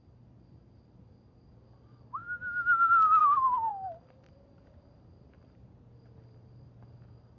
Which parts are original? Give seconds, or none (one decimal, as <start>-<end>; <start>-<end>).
0.0-7.4